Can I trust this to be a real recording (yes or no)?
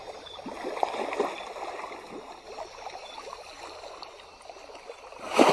yes